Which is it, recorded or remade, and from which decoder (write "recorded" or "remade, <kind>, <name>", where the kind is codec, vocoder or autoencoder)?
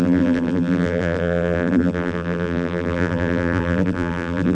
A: remade, vocoder, BigVGAN v2